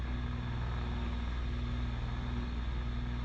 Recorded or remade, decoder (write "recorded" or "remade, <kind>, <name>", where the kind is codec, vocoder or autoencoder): recorded